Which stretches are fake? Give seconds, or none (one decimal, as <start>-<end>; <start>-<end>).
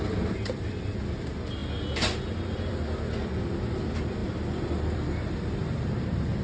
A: none